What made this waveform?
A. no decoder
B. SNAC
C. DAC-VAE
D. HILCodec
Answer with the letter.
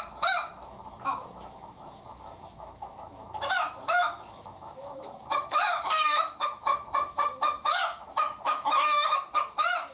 C